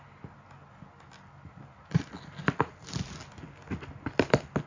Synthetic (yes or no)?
no